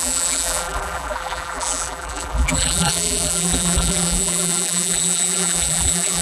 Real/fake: fake